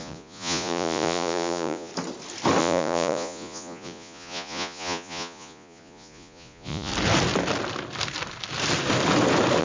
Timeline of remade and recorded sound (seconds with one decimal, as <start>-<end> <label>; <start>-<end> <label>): 0.0-1.9 remade; 1.9-2.6 recorded; 2.6-6.9 remade; 6.9-9.6 recorded